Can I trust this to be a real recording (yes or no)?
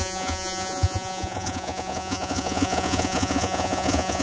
no